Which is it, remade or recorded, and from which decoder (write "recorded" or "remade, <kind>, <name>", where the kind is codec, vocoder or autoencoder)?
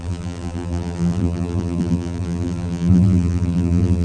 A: remade, vocoder, BigVGAN v2